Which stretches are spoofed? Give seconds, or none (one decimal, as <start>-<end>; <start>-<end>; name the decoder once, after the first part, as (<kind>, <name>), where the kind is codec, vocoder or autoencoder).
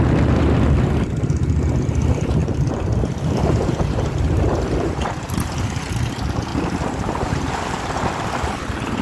2.4-5.5 (vocoder, BigVGAN v2); 6.5-7.6